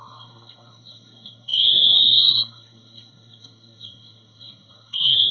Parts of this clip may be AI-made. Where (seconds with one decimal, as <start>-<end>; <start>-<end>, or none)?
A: 0.0-5.3